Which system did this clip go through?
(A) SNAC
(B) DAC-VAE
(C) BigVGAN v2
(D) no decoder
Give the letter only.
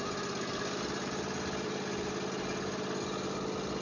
D